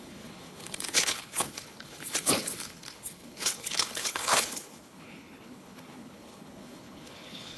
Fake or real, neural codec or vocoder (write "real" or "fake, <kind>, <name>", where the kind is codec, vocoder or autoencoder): fake, codec, HILCodec